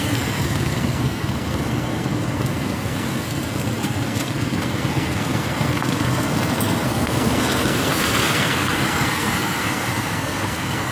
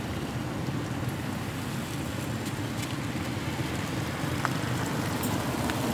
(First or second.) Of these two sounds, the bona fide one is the second